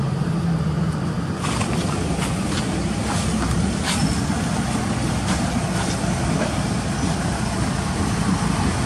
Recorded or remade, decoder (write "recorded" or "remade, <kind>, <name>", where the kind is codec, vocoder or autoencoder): recorded